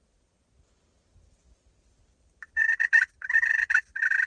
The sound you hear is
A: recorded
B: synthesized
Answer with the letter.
A